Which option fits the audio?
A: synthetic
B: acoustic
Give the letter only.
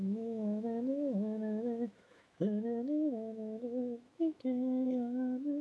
A